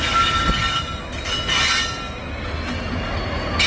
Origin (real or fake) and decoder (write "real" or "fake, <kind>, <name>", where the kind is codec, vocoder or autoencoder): real